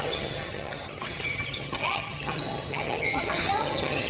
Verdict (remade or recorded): remade